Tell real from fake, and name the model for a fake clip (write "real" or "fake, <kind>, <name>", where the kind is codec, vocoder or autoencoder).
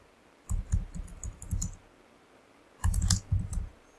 real